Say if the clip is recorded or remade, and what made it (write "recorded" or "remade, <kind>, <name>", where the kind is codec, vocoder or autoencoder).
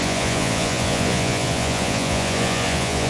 remade, vocoder, Vocos